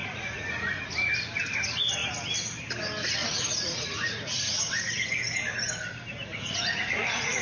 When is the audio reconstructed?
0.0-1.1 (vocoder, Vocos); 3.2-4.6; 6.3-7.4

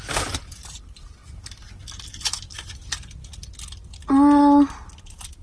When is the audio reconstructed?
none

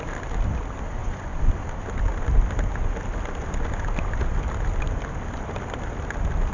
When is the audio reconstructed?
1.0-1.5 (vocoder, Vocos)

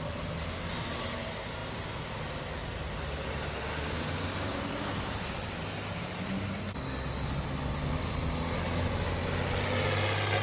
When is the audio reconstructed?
none

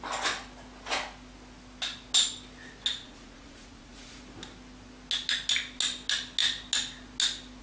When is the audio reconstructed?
2.9-4.2 (vocoder, Vocos)